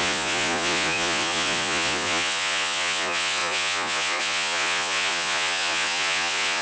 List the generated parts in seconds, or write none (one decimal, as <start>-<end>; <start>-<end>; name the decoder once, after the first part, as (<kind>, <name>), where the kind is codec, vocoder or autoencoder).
0.0-6.6 (vocoder, Vocos)